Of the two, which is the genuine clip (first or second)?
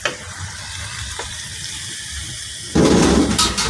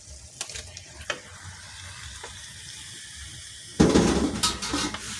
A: second